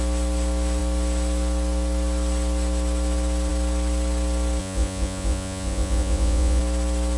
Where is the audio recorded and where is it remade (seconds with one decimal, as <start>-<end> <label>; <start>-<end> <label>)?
0.0-4.6 recorded; 4.6-6.6 remade; 6.6-7.2 recorded